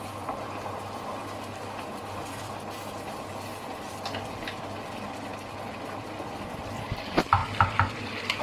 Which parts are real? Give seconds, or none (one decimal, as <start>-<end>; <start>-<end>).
0.0-8.4